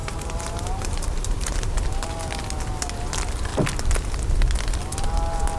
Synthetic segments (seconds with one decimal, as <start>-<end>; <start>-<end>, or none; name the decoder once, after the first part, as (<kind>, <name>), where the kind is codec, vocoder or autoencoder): 0.0-1.5 (vocoder, BigVGAN v2)